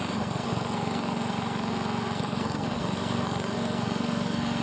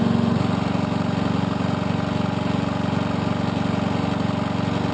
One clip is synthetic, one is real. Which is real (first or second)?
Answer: second